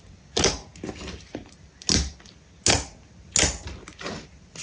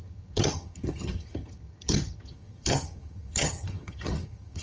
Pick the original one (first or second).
first